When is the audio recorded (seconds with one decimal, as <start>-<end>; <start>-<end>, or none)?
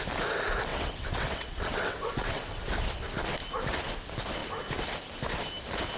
0.0-0.7; 2.7-6.0